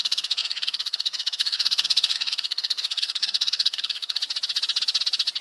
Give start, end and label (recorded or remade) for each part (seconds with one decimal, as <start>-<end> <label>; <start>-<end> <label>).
0.0-4.2 remade; 4.2-5.4 recorded